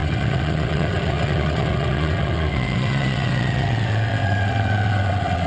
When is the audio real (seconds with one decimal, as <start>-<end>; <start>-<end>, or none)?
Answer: none